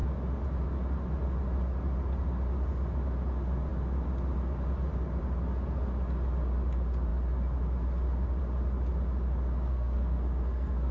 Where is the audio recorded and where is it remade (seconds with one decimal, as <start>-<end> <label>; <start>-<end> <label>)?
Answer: 0.0-9.7 recorded; 9.7-10.9 remade